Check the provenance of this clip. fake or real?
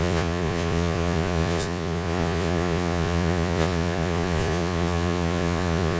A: fake